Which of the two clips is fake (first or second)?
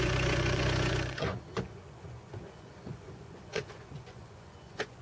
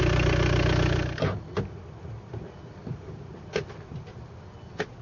first